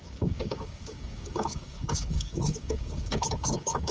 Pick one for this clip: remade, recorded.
remade